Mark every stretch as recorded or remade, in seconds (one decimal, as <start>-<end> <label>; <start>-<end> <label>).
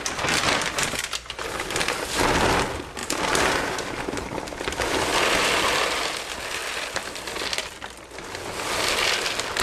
0.0-3.0 recorded; 3.0-3.5 remade; 3.5-5.1 recorded; 5.1-5.8 remade; 5.8-9.6 recorded